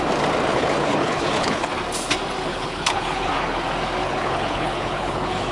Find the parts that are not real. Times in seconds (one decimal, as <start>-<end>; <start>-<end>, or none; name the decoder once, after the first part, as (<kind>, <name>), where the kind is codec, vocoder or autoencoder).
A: 0.5-1.7 (codec, HILCodec); 2.5-3.3; 4.0-5.5